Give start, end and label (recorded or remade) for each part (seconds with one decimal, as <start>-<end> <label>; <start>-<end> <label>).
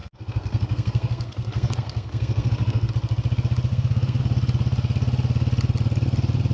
0.0-2.9 remade; 2.9-3.7 recorded; 3.7-4.2 remade; 4.2-6.5 recorded